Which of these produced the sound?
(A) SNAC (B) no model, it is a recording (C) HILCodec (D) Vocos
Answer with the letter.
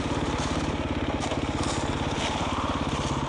B